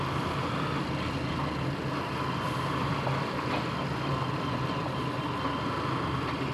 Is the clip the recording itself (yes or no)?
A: yes